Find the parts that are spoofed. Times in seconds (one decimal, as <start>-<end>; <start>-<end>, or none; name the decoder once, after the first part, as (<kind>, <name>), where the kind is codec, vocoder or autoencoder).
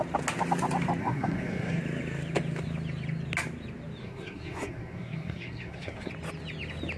1.0-1.8 (codec, SNAC); 4.0-6.1